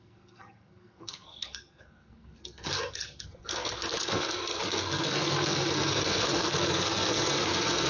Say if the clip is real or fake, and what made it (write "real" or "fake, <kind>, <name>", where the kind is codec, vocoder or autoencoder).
fake, codec, SNAC